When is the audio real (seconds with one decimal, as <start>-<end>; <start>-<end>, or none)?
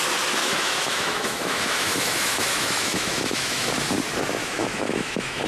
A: 0.0-0.4; 3.7-4.4